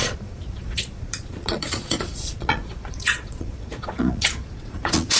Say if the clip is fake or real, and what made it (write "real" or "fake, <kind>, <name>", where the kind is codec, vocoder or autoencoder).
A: fake, vocoder, Vocos